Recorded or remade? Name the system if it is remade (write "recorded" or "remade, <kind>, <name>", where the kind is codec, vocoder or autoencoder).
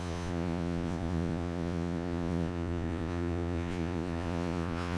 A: remade, vocoder, Vocos